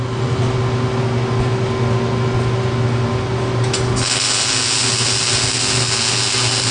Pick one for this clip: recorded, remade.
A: recorded